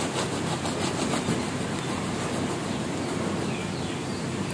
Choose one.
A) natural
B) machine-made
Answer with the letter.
A